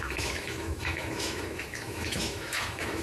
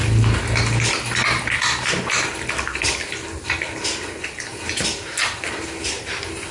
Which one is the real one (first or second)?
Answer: second